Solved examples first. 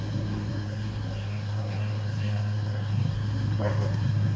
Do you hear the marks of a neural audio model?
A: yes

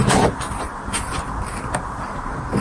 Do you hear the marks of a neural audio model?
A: no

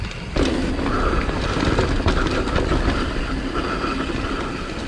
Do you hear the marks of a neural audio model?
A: no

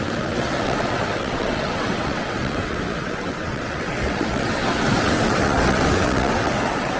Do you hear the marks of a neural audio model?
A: yes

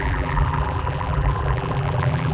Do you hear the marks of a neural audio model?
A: yes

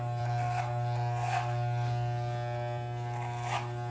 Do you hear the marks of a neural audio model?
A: no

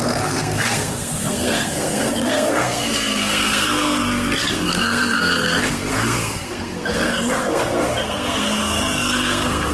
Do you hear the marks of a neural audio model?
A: yes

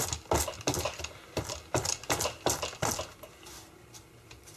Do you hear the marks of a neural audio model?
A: no